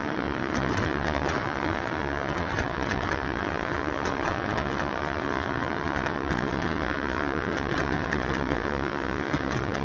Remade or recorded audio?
remade